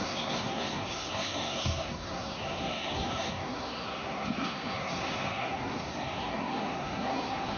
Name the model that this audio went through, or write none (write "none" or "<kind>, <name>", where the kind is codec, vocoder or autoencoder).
codec, SNAC